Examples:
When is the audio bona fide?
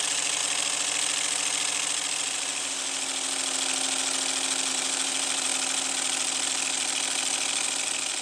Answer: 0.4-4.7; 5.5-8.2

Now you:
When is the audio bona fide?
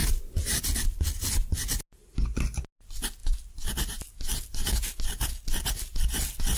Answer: 0.6-2.0; 2.6-6.6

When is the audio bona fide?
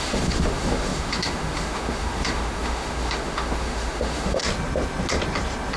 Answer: 4.4-5.8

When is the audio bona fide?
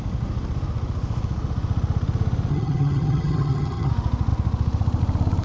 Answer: 0.0-2.5; 3.9-5.4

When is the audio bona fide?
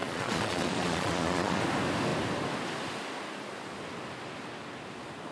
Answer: 1.6-5.3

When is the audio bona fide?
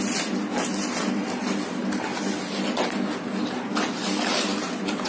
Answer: 0.0-5.1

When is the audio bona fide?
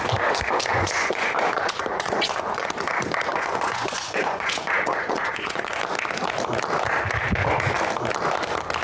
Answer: 0.0-0.7; 2.7-3.3; 5.7-8.8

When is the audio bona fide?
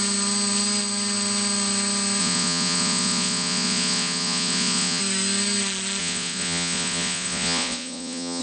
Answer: 0.0-2.2; 5.0-6.0